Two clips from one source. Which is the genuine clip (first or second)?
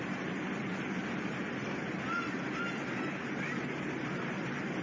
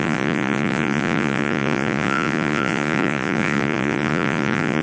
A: first